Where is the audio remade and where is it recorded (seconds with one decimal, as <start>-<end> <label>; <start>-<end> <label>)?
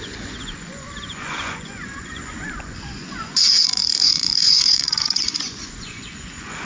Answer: 0.0-6.7 remade